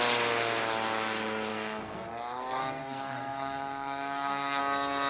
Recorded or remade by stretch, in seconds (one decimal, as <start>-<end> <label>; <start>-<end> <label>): 0.0-1.5 recorded; 1.5-4.6 remade; 4.6-5.1 recorded